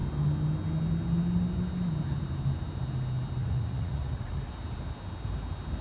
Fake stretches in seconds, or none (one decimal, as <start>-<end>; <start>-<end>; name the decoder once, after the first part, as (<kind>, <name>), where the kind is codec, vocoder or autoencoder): 3.4-4.5 (vocoder, Vocos)